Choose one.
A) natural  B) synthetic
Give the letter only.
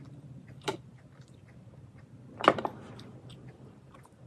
B